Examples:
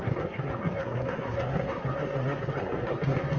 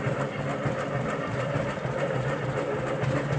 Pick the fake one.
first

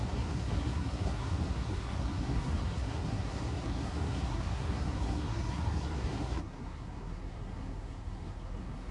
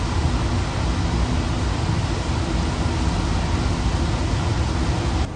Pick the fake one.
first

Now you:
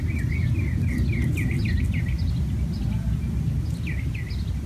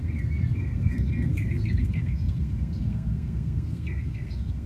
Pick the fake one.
second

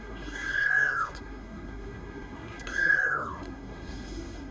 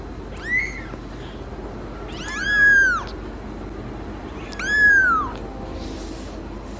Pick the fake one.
first